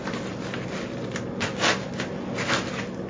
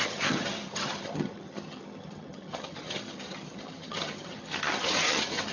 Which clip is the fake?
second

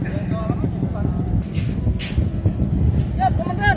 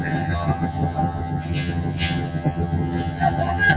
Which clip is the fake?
second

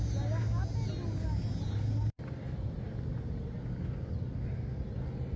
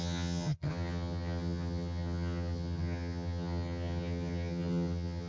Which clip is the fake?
second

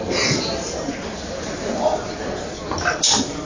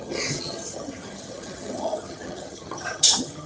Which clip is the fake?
second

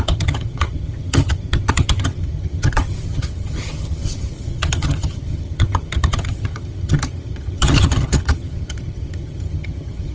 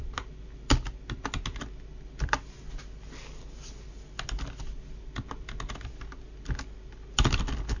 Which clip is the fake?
first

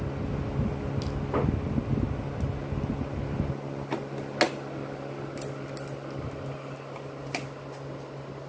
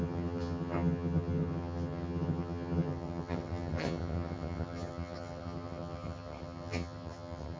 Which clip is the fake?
second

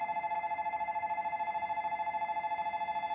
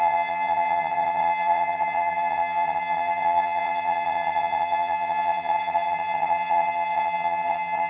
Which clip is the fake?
second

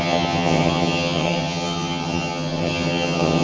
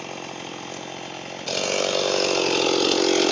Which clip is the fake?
first